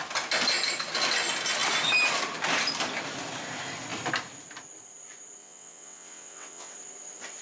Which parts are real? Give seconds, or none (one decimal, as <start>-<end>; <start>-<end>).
0.0-5.4; 6.7-7.4